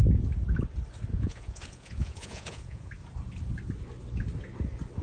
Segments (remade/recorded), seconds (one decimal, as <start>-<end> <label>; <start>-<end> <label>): 0.0-1.1 recorded; 1.1-2.9 remade; 2.9-5.0 recorded